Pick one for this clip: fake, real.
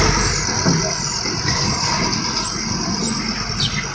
real